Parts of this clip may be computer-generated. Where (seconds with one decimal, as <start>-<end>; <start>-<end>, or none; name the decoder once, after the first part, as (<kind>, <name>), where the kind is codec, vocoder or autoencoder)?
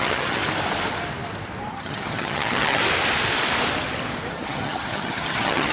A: 0.0-0.4 (vocoder, HiFi-GAN); 1.7-2.8; 4.3-5.7